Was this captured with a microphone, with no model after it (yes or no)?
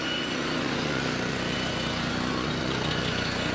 no